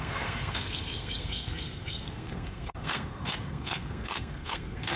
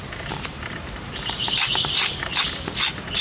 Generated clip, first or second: first